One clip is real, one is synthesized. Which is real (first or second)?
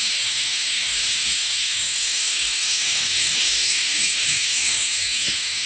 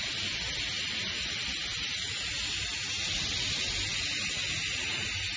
second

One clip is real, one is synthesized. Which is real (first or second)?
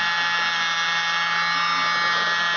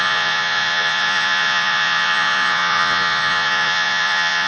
first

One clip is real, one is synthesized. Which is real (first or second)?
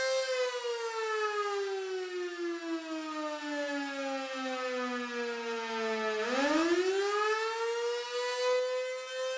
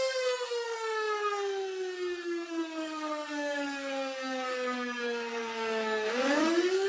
first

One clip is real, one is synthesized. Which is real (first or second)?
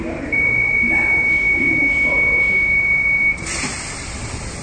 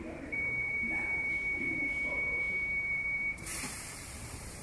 first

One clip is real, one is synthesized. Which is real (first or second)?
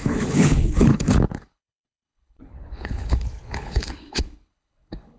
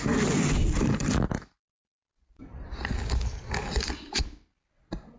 second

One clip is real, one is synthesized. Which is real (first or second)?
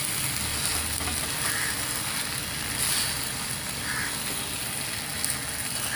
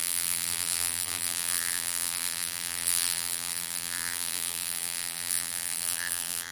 first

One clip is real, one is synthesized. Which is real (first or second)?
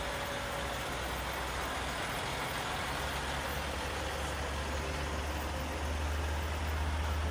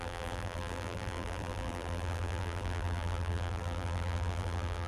first